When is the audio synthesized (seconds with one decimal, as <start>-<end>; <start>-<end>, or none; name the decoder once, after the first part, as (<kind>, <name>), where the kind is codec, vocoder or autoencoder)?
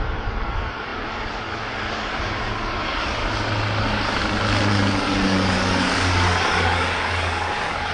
0.0-3.2 (codec, DAC); 3.8-4.2; 4.7-7.9